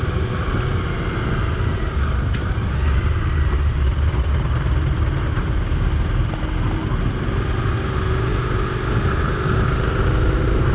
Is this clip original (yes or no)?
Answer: yes